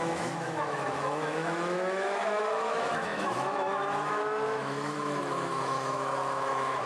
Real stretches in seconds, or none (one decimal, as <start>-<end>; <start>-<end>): none